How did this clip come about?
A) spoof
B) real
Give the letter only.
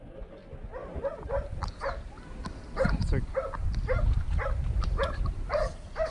B